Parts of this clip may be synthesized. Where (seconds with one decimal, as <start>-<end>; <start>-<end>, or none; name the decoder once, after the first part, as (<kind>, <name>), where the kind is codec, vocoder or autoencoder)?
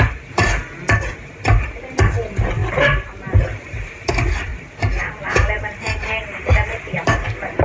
0.0-0.6 (vocoder, BigVGAN v2); 1.1-4.5; 5.0-7.6